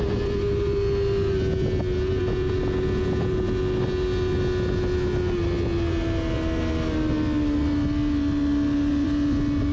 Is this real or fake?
real